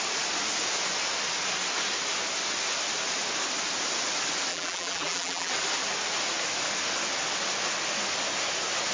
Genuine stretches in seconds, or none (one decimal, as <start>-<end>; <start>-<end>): 0.0-4.5; 5.5-8.9